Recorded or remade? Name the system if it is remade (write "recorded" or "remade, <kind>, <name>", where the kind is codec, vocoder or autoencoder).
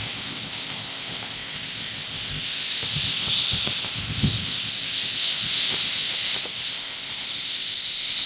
remade, codec, ZipCodec